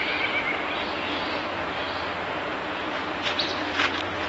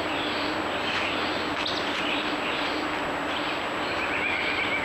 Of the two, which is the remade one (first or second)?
first